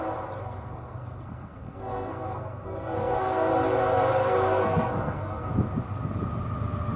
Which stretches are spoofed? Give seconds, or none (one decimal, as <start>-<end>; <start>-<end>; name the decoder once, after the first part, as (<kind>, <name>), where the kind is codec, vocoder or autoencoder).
0.4-3.5 (codec, SNAC); 4.2-5.5